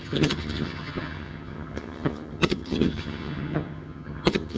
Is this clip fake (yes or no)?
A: yes